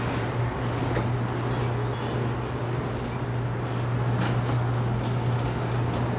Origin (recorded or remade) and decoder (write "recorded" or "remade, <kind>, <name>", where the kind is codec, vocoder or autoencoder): recorded